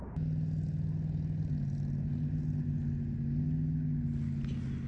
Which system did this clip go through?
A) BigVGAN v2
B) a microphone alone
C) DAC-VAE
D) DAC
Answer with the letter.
B